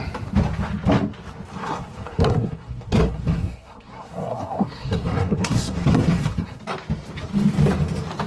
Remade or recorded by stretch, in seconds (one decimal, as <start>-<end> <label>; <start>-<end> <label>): 0.0-1.6 recorded; 1.6-6.6 remade; 6.6-8.3 recorded